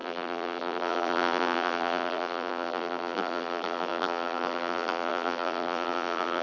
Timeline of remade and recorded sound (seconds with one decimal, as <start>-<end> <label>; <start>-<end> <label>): 0.0-6.4 remade